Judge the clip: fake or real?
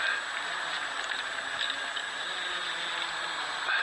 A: real